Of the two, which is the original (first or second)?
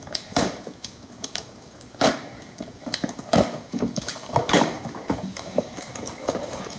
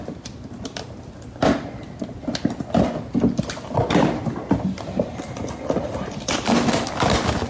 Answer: second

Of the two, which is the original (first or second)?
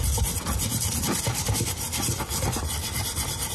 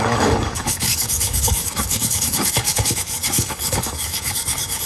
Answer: first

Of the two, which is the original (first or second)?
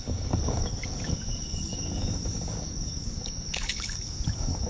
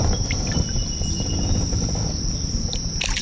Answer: second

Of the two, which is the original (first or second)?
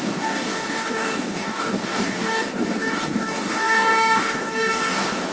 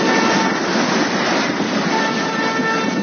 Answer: second